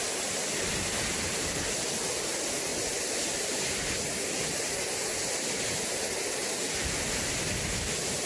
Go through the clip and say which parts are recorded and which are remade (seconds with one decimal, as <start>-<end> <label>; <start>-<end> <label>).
0.0-8.3 recorded